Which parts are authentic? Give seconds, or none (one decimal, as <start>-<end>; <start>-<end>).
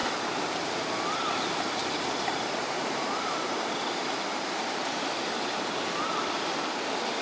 0.9-1.8; 6.1-7.2